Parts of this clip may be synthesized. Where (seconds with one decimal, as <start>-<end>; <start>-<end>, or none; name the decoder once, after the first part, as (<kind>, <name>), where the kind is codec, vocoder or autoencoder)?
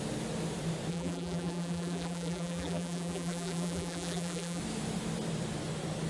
0.9-4.6 (vocoder, BigVGAN v2)